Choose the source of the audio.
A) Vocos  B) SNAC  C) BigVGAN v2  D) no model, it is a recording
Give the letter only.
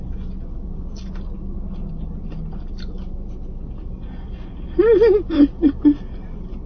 D